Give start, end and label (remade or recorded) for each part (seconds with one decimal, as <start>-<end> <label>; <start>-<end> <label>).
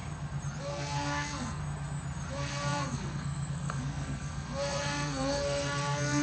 0.0-0.6 recorded; 0.6-1.6 remade; 1.6-2.3 recorded; 2.3-6.2 remade